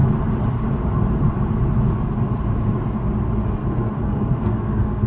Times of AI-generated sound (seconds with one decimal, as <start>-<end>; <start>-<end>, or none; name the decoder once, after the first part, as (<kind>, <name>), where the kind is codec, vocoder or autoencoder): 3.6-5.1 (codec, SNAC)